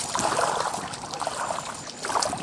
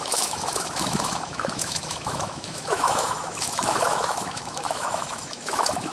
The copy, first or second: second